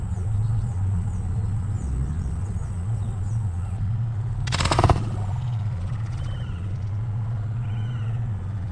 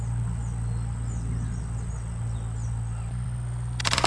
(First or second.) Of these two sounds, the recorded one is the second